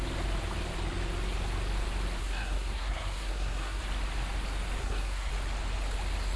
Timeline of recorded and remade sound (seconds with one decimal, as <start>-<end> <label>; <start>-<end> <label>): 0.0-2.2 recorded; 2.2-3.8 remade; 3.8-4.8 recorded; 4.8-5.3 remade; 5.3-6.4 recorded